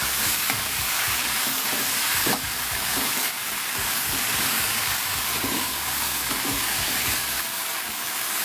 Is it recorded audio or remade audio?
remade